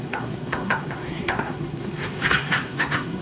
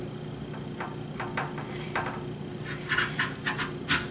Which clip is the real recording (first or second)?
second